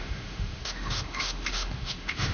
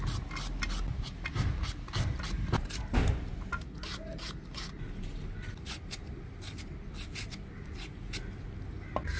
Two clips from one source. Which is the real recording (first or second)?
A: second